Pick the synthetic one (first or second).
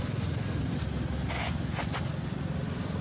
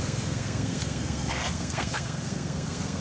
second